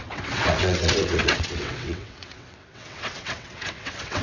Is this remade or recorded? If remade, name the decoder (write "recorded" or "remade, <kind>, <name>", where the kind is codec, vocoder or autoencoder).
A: remade, vocoder, WaveNeXt